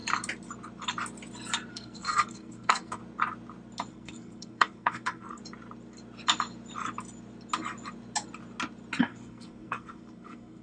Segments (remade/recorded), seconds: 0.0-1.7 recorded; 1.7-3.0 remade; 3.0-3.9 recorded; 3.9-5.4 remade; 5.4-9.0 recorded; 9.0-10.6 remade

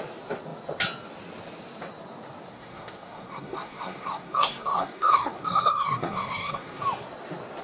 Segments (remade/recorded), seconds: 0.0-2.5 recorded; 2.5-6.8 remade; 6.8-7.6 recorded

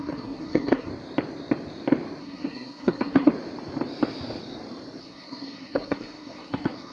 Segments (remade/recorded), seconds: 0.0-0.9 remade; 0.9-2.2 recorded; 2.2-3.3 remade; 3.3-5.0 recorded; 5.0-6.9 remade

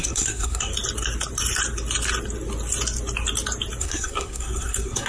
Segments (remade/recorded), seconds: 0.0-0.7 remade; 0.7-3.8 recorded; 3.8-5.1 remade

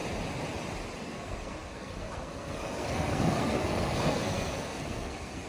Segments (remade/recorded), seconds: 0.0-1.0 recorded; 1.0-5.5 remade